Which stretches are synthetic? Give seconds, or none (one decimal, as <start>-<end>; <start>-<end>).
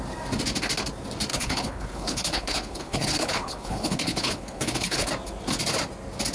1.3-5.1